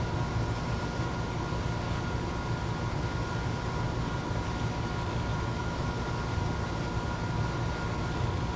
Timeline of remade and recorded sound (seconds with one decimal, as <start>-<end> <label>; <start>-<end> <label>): 0.0-5.3 recorded; 5.3-5.9 remade; 5.9-8.6 recorded